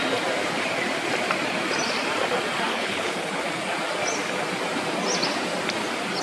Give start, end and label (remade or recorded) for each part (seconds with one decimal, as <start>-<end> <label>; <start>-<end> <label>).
0.0-2.7 recorded; 2.7-3.4 remade; 3.4-6.2 recorded